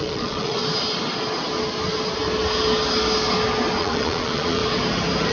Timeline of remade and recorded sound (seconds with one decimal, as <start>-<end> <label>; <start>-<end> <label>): 0.0-0.6 remade; 0.6-3.8 recorded; 3.8-4.6 remade; 4.6-5.3 recorded